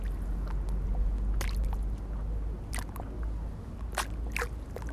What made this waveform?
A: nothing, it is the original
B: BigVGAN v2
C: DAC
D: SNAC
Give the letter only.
A